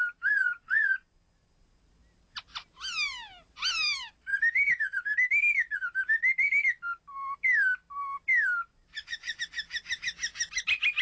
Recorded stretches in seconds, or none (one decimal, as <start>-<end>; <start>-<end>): 0.0-0.4; 1.8-8.7; 9.4-11.0

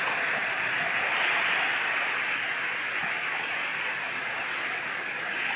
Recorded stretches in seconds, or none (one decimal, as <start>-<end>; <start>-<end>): 0.0-5.6

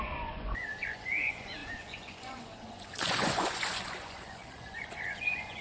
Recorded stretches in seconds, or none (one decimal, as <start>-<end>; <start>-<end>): none

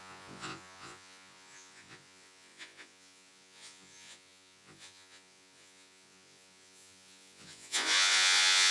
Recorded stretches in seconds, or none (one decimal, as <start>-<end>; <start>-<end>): none

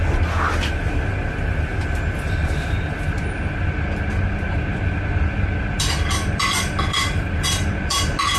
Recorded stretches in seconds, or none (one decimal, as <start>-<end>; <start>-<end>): 0.0-8.4

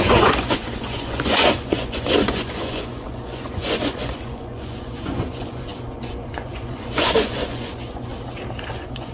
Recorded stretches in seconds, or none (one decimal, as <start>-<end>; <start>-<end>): 8.1-8.7

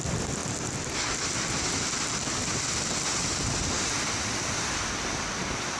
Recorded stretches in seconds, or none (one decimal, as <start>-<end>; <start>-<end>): 0.0-5.8